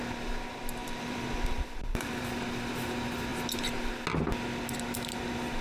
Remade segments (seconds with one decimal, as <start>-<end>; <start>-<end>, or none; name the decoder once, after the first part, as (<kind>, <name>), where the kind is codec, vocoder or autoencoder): 0.8-2.2 (vocoder, BigVGAN v2)